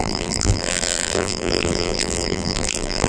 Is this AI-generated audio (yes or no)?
yes